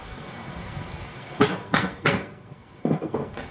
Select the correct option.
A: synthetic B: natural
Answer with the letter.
A